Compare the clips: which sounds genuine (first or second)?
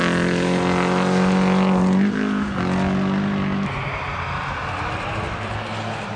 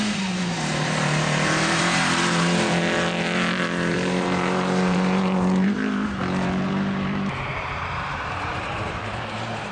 first